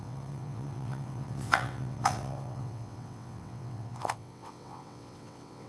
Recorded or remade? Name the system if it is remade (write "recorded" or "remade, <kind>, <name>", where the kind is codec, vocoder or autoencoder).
remade, vocoder, WaveNeXt